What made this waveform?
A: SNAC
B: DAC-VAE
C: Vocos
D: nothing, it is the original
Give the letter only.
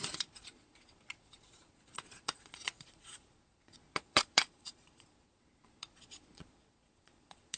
C